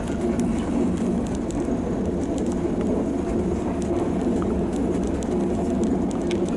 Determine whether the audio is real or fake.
real